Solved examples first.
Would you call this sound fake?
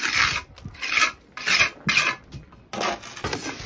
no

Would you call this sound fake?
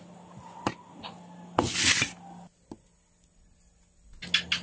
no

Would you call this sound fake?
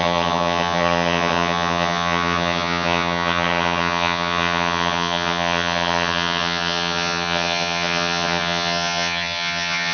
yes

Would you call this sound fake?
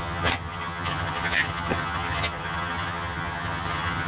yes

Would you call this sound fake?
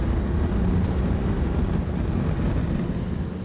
no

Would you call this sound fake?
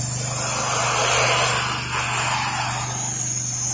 no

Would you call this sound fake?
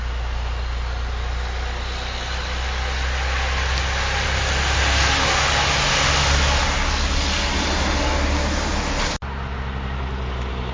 no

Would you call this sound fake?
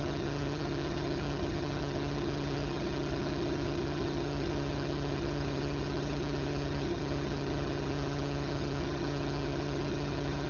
yes